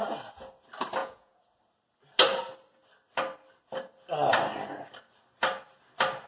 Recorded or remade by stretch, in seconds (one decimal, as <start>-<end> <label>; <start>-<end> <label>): 0.0-1.0 recorded; 1.0-1.6 remade; 1.6-6.3 recorded